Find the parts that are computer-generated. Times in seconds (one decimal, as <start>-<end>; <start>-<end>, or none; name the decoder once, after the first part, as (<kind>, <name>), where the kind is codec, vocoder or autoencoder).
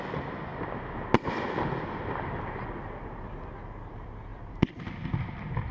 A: 4.3-4.8 (vocoder, BigVGAN v2)